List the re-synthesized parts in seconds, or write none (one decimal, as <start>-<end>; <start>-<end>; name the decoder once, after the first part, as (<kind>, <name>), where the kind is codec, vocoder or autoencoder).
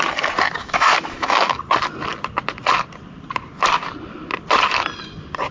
0.6-1.6 (autoencoder, DAC-VAE)